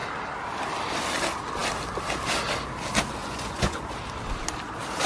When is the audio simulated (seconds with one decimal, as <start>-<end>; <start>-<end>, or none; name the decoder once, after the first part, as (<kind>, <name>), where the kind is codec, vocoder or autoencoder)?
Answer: 3.2-3.8 (vocoder, Vocos)